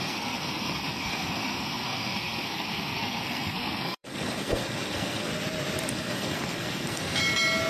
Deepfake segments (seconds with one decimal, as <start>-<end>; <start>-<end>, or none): 0.0-5.3; 5.9-7.2